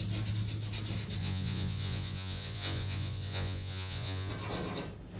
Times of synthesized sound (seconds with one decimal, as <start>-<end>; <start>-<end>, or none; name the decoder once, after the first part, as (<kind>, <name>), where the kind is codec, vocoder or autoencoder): 1.2-4.3 (vocoder, Vocos)